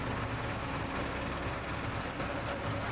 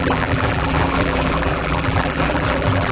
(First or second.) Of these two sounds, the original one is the first